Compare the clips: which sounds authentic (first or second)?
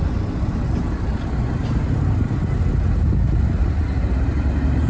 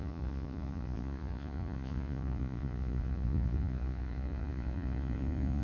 first